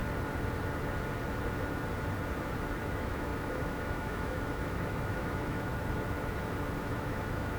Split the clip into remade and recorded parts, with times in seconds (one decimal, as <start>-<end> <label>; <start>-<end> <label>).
0.0-2.8 recorded; 2.8-5.7 remade; 5.7-6.8 recorded; 6.8-7.6 remade